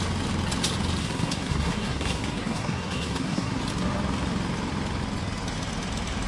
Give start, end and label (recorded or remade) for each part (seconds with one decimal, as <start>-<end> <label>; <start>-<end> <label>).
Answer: 0.0-1.0 recorded; 1.0-3.6 remade; 3.6-6.3 recorded